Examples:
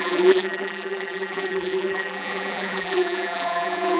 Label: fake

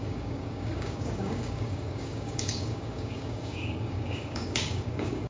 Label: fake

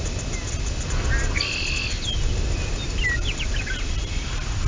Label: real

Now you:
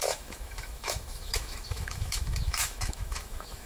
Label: fake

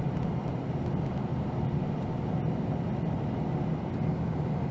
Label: real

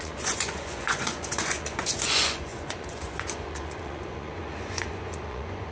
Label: fake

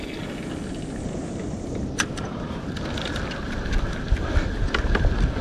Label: real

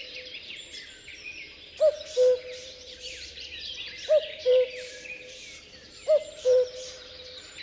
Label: fake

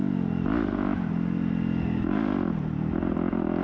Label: real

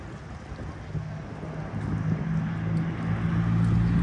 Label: real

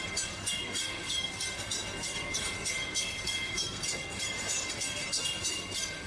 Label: fake